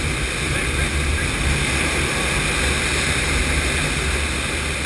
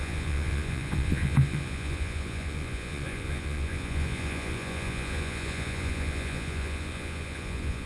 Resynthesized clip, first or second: second